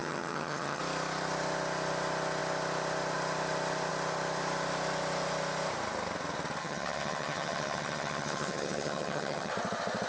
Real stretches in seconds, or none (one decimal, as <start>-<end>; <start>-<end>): 0.8-6.6; 9.5-10.1